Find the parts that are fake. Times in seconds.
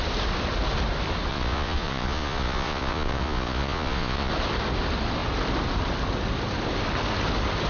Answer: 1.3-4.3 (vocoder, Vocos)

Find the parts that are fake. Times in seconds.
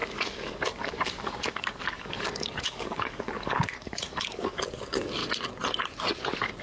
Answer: 0.0-5.2 (codec, DAC)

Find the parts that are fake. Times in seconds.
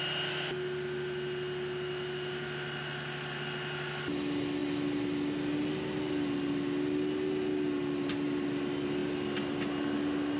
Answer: none